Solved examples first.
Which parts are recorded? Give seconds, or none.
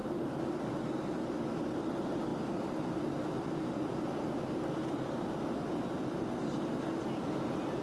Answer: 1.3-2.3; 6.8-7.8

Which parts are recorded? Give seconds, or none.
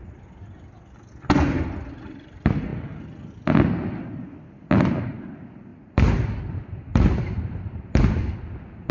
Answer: 0.0-5.7; 6.2-6.9; 8.0-8.9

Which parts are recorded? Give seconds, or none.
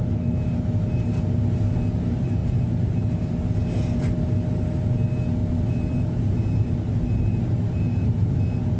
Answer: 0.0-5.4; 8.4-8.8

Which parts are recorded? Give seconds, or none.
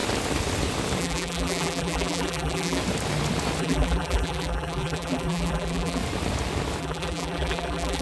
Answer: 0.0-1.0; 2.8-3.6; 6.0-6.8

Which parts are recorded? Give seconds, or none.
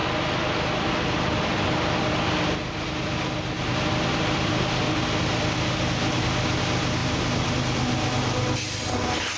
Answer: 0.0-7.0; 7.5-9.4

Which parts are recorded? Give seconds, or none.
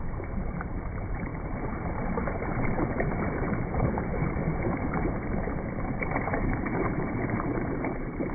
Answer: 1.3-1.9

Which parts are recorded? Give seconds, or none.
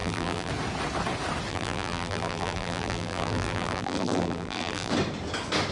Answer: 0.5-1.5; 4.9-5.7